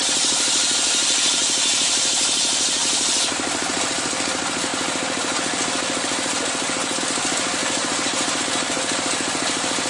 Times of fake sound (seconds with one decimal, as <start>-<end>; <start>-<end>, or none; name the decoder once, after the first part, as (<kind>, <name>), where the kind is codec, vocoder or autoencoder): 2.8-3.8 (vocoder, BigVGAN v2); 7.6-8.4